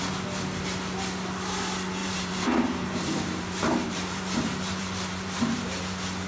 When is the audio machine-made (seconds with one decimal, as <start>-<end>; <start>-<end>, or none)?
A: 2.0-5.8